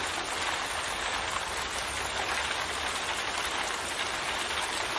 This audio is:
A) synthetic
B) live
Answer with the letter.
B